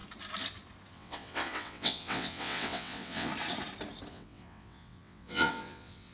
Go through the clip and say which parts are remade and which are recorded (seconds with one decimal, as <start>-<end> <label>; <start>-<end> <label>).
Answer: 0.0-0.9 recorded; 0.9-3.3 remade; 3.3-4.1 recorded; 4.1-6.1 remade